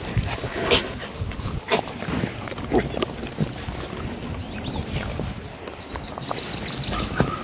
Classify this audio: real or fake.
real